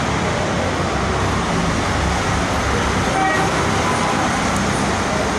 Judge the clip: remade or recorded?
recorded